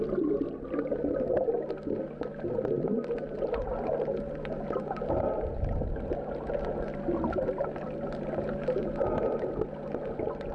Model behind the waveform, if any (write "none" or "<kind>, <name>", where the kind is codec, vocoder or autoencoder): none